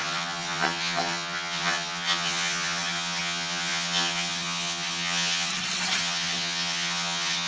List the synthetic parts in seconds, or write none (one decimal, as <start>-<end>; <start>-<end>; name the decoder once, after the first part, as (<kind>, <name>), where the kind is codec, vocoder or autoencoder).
0.0-5.5 (vocoder, HiFi-GAN); 6.0-7.5